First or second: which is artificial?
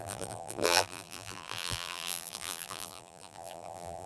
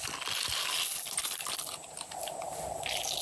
first